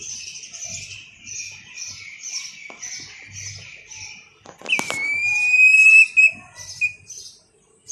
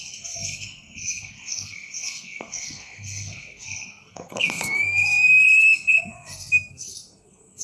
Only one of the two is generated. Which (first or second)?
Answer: second